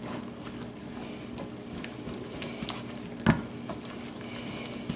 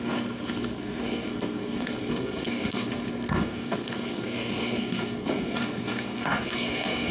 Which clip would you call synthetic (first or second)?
second